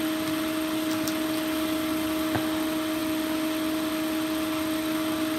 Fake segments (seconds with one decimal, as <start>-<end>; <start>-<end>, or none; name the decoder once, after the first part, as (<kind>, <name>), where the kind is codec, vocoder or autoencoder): none